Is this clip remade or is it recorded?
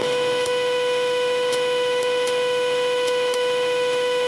remade